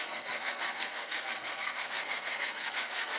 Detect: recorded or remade remade